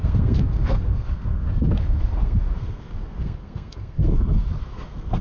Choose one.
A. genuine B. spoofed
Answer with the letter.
B